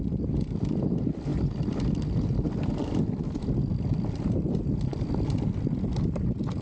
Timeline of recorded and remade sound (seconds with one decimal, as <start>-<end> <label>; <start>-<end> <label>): 0.0-6.6 recorded